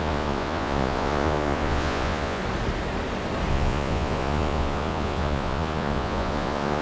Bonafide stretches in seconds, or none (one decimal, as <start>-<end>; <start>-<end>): 2.4-3.5